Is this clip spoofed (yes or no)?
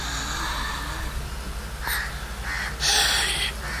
no